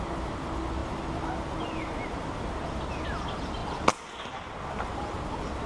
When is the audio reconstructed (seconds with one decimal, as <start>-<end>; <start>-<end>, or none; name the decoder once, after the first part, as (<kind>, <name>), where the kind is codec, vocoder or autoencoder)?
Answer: none